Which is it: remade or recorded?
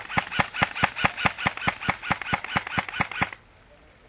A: recorded